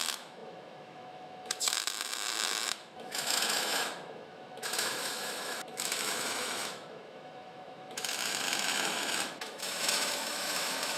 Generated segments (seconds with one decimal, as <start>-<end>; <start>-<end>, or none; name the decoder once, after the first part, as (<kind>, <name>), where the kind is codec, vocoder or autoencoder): 0.0-11.0 (autoencoder, DAC-VAE)